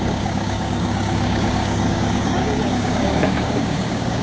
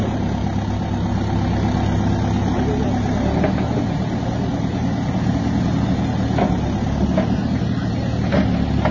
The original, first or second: second